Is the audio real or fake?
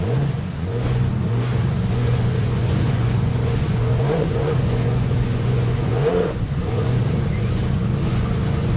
fake